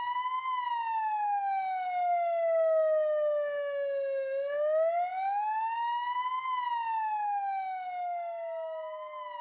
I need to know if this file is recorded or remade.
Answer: recorded